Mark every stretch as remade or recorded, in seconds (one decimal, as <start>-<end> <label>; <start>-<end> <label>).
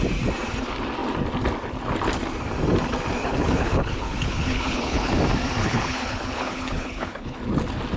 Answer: 0.0-3.2 recorded; 3.2-5.1 remade; 5.1-5.6 recorded; 5.6-7.4 remade; 7.4-8.0 recorded